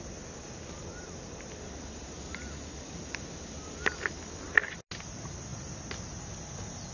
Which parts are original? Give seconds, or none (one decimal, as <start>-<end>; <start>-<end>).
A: 0.0-6.9